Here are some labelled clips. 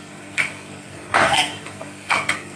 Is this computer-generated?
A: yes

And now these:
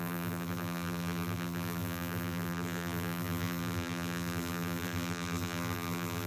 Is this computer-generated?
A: yes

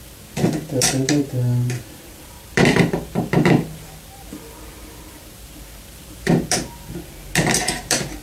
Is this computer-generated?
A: yes